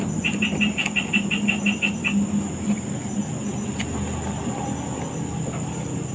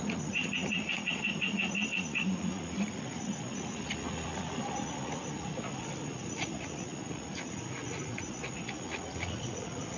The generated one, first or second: second